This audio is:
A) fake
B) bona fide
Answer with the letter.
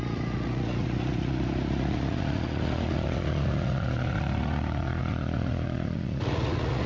A